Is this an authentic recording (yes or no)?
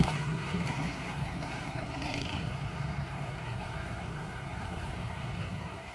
no